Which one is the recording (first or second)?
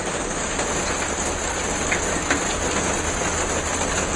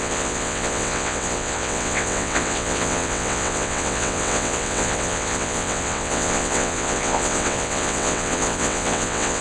first